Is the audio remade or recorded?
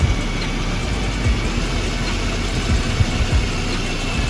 recorded